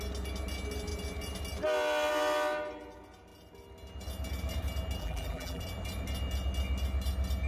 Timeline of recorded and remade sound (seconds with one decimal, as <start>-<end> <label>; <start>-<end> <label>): 0.0-5.0 recorded; 5.0-5.6 remade; 5.6-7.5 recorded